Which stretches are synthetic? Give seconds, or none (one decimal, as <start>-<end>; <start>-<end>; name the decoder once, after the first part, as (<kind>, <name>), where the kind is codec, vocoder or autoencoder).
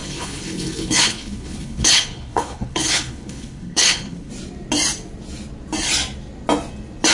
0.0-4.3 (codec, HILCodec)